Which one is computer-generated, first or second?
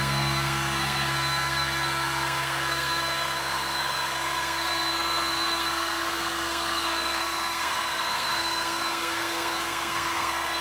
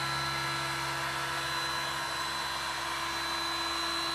first